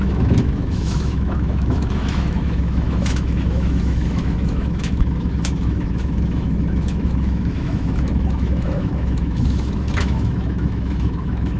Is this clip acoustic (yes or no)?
no